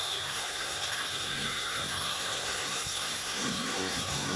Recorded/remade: remade